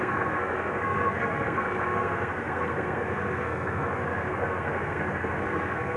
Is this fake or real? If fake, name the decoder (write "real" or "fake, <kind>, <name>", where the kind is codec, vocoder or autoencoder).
fake, codec, SNAC